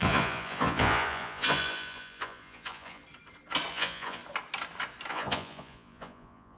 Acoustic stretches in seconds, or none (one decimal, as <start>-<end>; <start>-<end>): 3.0-3.7; 4.2-5.1